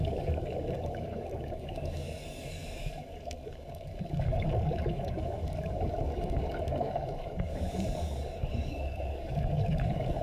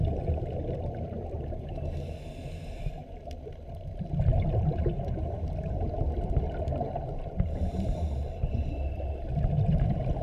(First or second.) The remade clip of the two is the first